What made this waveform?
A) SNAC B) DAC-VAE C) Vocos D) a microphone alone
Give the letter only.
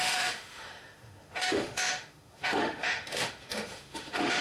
B